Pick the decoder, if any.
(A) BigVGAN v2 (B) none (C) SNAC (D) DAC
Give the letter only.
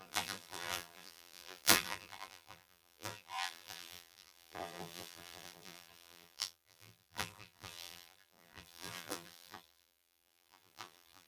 A